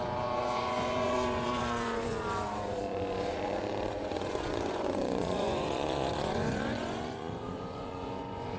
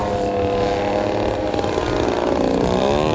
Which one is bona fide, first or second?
second